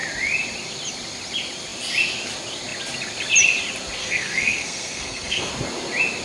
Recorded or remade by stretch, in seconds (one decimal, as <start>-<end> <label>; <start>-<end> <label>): 0.0-4.0 recorded; 4.0-5.5 remade; 5.5-6.2 recorded